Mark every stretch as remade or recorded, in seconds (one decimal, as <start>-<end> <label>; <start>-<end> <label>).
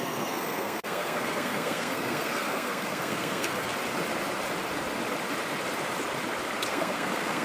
0.0-3.7 remade; 3.7-6.7 recorded; 6.7-7.4 remade